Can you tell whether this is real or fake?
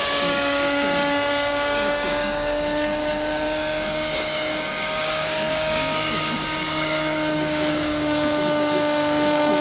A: fake